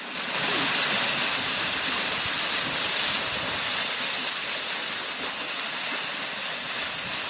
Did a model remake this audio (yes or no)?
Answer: no